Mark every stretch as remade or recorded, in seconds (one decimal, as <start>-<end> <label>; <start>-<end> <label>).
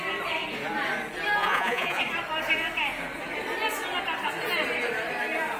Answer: 0.0-1.4 recorded; 1.4-2.0 remade; 2.0-5.6 recorded